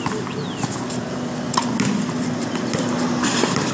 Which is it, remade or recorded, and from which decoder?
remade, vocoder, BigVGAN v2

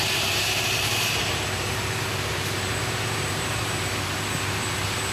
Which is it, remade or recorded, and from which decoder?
remade, vocoder, BigVGAN v2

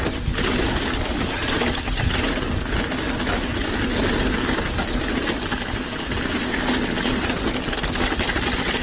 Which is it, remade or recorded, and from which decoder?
recorded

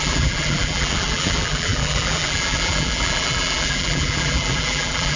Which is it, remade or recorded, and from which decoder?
remade, vocoder, BigVGAN v2